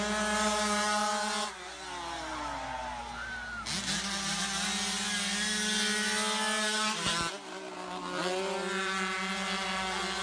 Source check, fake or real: real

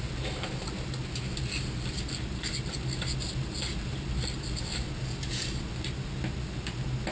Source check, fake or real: real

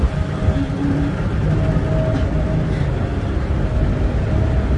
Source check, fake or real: real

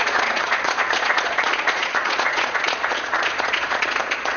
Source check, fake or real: fake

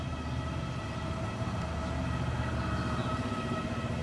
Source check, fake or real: real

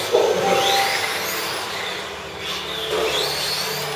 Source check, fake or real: real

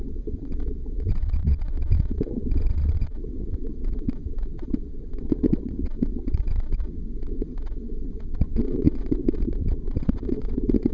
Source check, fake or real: fake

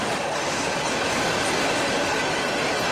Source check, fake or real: real